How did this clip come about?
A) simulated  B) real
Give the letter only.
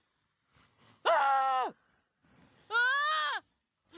B